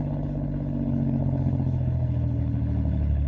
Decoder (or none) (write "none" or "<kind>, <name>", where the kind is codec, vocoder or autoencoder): codec, HILCodec